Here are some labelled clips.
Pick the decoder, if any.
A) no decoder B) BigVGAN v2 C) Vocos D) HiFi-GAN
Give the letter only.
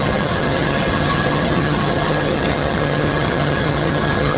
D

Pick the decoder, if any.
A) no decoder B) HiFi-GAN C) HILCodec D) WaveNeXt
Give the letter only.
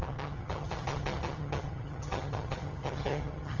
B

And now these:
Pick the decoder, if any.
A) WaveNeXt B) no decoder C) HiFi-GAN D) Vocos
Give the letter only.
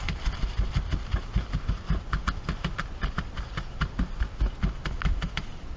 B